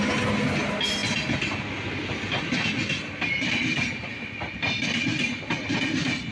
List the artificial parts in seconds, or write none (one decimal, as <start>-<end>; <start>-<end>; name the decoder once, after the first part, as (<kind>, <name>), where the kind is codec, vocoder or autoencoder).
none